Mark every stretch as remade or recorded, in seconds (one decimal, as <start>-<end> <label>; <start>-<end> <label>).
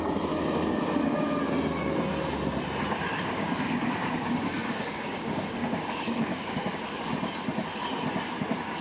0.0-3.1 recorded; 3.1-7.1 remade; 7.1-8.8 recorded